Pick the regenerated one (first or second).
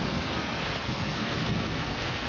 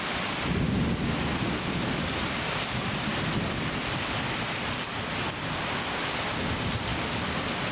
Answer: first